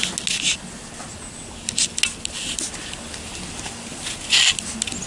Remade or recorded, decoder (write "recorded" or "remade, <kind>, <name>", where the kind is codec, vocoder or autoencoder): recorded